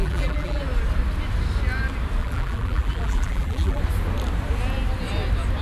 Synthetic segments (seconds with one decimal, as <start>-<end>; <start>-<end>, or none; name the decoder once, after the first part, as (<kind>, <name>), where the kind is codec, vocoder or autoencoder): 0.0-0.6 (vocoder, BigVGAN v2); 2.2-3.8